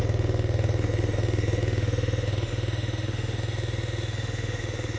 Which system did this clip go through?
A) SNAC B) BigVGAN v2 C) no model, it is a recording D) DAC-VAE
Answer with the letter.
D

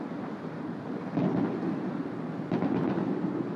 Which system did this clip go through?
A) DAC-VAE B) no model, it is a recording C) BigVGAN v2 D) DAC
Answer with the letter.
B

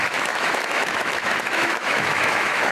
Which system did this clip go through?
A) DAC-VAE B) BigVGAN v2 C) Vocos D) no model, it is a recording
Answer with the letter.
A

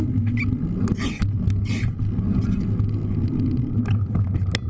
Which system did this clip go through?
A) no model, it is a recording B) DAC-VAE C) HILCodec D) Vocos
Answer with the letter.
A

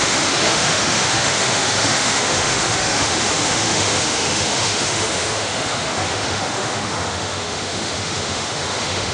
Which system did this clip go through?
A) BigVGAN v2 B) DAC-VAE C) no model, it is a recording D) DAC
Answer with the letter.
B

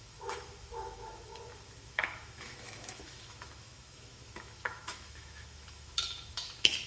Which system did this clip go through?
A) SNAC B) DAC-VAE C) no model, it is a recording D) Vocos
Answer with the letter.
B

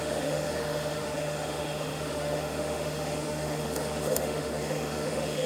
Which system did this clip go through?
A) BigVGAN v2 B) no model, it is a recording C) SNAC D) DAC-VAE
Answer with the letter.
D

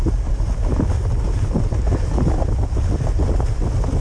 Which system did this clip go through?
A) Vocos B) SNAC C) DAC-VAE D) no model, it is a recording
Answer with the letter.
D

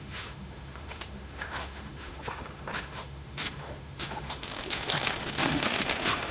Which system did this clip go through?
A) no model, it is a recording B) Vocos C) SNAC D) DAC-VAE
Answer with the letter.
D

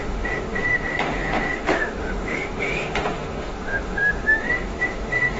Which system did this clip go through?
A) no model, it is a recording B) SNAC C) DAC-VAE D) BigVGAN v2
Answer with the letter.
C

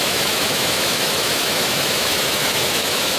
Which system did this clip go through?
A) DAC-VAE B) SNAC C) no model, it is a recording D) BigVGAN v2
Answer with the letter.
A